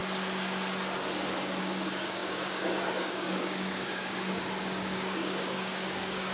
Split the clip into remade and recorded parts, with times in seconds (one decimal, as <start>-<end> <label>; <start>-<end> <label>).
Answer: 0.0-1.6 recorded; 1.6-6.3 remade